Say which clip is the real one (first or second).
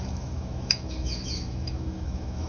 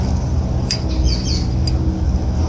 second